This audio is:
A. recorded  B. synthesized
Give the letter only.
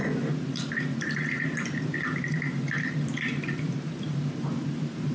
B